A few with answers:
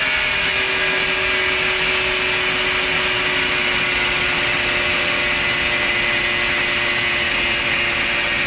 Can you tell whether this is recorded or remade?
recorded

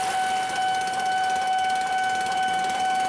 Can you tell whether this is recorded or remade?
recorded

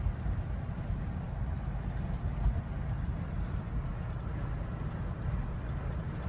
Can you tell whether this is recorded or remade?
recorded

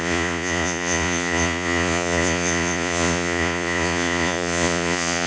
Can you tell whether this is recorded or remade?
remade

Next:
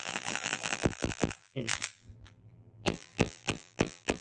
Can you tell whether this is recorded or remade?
remade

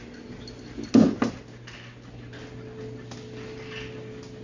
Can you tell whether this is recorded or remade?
recorded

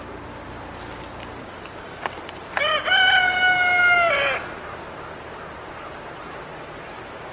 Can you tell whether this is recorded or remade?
recorded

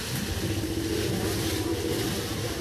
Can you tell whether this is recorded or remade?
remade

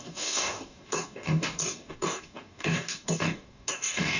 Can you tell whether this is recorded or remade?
remade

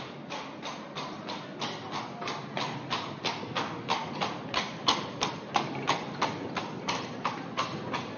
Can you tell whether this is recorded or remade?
recorded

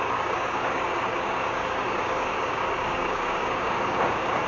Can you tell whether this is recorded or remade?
remade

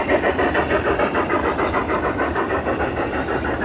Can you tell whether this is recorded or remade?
recorded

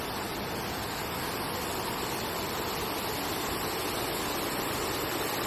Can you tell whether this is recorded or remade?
recorded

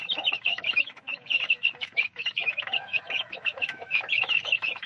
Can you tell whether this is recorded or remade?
remade